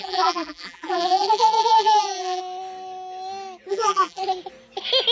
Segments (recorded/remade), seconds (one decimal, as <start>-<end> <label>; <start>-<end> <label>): 0.0-2.4 remade; 2.4-3.7 recorded; 3.7-4.2 remade; 4.2-5.1 recorded